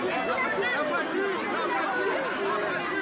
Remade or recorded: recorded